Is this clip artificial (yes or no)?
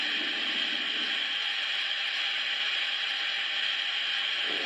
no